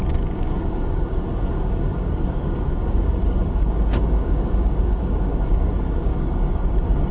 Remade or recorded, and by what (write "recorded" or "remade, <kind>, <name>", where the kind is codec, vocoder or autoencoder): remade, codec, DAC